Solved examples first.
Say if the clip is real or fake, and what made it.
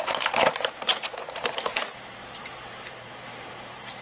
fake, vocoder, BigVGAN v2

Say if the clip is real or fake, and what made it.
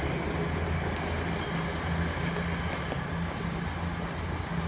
real